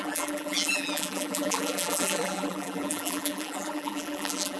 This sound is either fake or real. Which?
fake